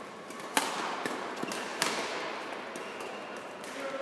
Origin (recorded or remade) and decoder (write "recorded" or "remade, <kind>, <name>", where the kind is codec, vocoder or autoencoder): recorded